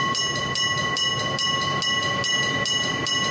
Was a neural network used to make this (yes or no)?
no